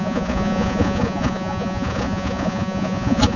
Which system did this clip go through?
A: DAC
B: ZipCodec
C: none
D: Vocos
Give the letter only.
D